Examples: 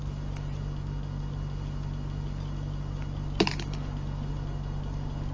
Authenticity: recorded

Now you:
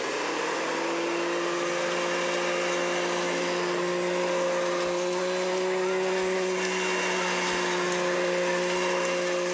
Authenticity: recorded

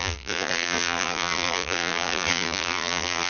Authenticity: remade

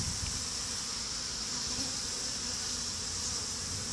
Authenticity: recorded